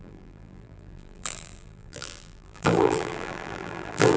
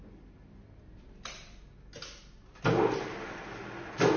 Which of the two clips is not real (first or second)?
first